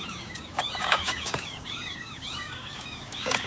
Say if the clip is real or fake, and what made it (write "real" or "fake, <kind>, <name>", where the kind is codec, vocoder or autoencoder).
fake, codec, DAC